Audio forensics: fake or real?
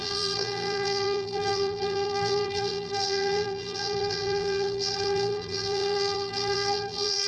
fake